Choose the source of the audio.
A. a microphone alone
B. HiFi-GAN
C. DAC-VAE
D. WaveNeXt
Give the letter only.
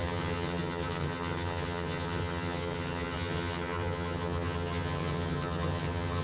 B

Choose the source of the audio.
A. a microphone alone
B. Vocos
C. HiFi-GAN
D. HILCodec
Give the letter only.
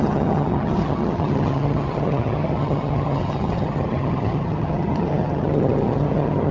C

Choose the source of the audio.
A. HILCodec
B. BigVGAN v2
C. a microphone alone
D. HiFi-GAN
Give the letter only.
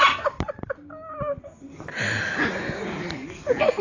C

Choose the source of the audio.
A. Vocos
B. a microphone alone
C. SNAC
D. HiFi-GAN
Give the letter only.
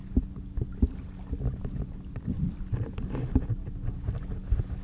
B